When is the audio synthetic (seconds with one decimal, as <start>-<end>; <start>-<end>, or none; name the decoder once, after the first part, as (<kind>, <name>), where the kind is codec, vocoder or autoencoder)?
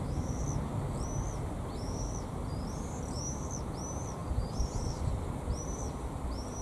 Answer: none